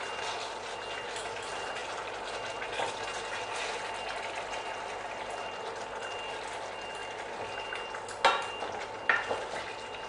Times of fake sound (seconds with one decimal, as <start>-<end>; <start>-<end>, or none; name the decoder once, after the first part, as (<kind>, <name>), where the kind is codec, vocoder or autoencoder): none